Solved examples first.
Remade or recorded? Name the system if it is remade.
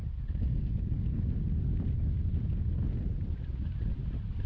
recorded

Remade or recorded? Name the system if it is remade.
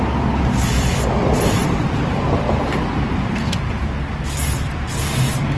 recorded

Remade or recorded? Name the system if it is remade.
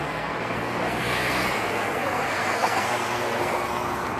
remade, codec, SNAC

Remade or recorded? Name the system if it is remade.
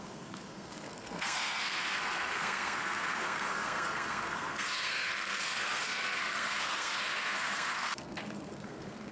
remade, codec, SNAC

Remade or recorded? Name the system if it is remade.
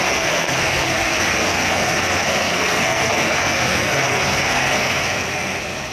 remade, codec, SNAC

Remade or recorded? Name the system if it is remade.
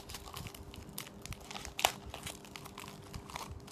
recorded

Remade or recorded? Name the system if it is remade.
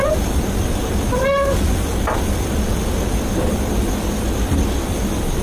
recorded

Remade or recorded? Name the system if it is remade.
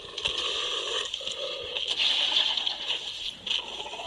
recorded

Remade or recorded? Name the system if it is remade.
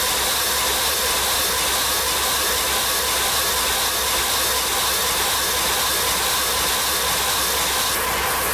recorded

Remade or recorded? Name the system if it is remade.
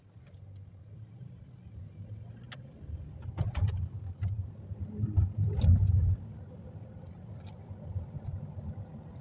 recorded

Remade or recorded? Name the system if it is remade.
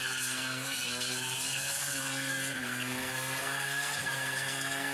remade, codec, SNAC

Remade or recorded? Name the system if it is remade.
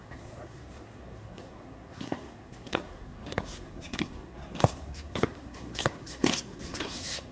remade, codec, SNAC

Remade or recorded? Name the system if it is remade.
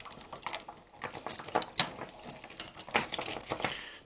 recorded